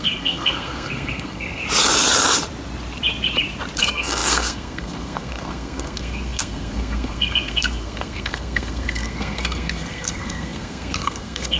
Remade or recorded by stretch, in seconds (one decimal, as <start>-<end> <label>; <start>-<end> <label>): 0.0-1.6 remade; 1.6-3.8 recorded; 3.8-11.6 remade